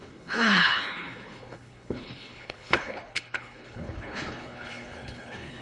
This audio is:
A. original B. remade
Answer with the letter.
B